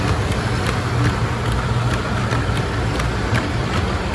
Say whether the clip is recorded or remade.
recorded